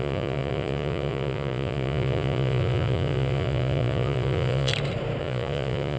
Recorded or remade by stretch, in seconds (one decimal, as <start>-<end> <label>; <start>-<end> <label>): 0.0-4.7 remade; 4.7-5.2 recorded; 5.2-6.0 remade